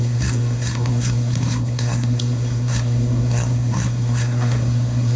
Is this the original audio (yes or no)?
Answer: no